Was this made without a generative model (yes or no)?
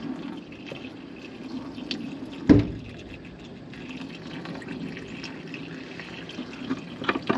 yes